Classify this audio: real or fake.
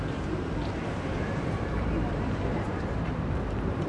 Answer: fake